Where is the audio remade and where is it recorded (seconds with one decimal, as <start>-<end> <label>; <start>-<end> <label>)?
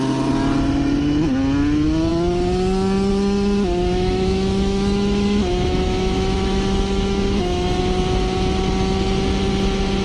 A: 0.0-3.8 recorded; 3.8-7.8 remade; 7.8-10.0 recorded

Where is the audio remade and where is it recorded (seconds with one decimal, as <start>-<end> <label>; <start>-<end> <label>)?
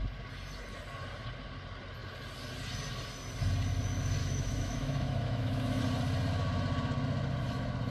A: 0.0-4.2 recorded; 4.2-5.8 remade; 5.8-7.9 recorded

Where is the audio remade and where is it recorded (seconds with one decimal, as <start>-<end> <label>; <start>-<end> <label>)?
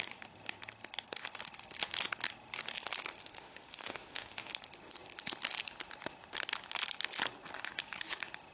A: 0.0-3.2 recorded; 3.2-4.5 remade; 4.5-8.5 recorded